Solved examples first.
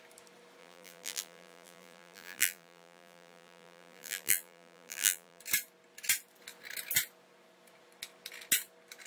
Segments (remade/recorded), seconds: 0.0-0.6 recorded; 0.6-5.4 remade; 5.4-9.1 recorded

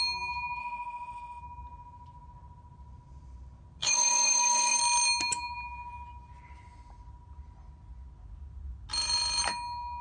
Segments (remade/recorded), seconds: 0.0-0.6 recorded; 0.6-1.4 remade; 1.4-3.8 recorded; 3.8-4.8 remade; 4.8-10.0 recorded